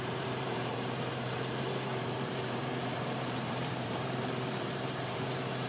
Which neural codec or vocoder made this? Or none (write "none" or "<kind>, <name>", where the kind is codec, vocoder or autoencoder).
vocoder, BigVGAN v2